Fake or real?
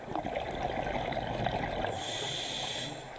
real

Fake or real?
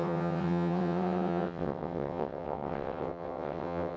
fake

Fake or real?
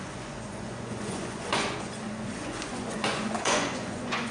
fake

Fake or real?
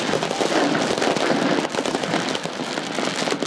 real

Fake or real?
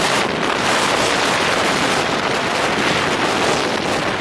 real